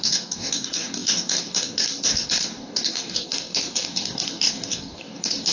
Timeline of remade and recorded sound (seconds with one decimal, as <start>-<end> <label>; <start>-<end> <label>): 0.0-5.5 remade